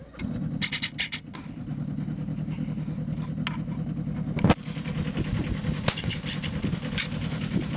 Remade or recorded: recorded